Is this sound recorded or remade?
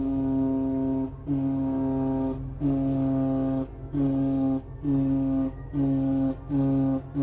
recorded